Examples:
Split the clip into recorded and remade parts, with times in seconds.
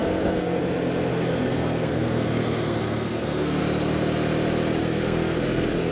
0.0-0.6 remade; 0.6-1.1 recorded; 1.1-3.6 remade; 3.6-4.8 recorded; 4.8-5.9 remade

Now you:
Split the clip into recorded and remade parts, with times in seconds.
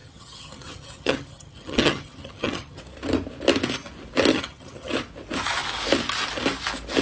0.0-2.8 remade; 2.8-4.3 recorded; 4.3-4.9 remade; 4.9-7.0 recorded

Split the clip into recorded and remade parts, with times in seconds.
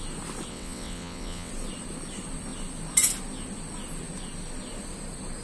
0.0-0.5 recorded; 0.5-1.5 remade; 1.5-5.4 recorded